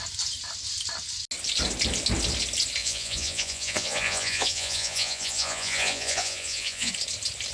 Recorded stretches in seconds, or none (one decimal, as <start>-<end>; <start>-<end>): 0.0-2.8; 6.9-7.5